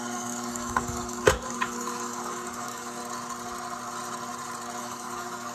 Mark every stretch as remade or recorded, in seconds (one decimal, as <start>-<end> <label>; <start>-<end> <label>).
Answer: 0.0-3.0 remade; 3.0-4.8 recorded; 4.8-5.5 remade